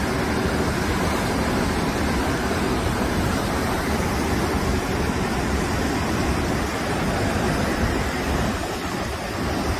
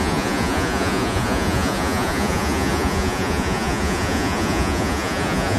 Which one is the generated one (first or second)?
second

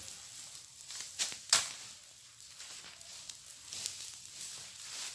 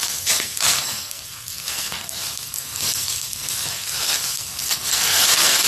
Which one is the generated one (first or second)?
second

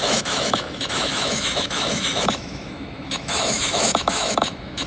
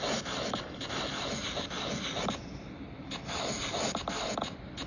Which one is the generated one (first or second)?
first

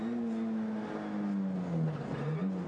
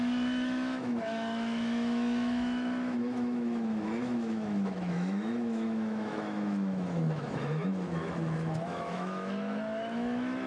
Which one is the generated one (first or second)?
second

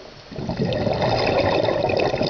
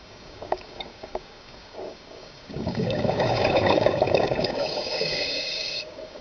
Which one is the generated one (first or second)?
second